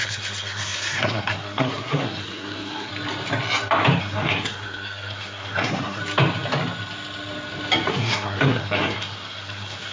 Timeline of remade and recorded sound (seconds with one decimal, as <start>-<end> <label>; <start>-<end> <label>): 0.0-2.9 remade; 2.9-4.0 recorded; 4.0-6.0 remade; 6.0-7.9 recorded; 7.9-9.9 remade